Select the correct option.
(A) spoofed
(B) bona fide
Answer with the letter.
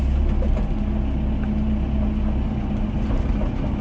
B